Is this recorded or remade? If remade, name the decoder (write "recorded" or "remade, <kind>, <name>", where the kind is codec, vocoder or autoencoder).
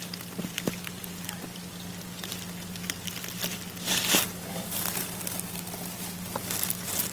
recorded